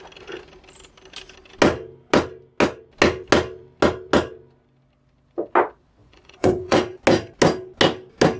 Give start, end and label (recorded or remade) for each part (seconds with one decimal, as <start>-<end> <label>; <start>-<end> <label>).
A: 0.0-6.0 recorded; 6.0-7.0 remade; 7.0-8.4 recorded